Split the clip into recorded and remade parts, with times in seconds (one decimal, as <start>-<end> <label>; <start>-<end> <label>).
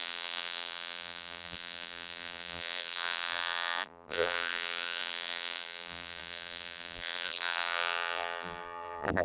0.0-9.2 remade